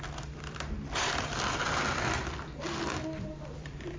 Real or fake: fake